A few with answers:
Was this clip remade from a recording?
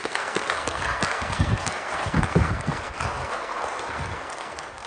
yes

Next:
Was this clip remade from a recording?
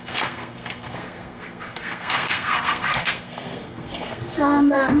yes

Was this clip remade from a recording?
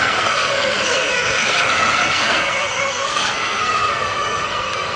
yes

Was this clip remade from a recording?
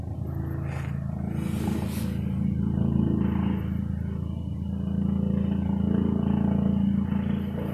no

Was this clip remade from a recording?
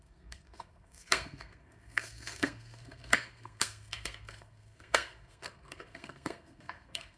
yes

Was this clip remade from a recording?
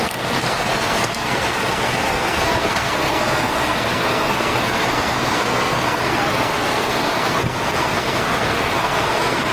yes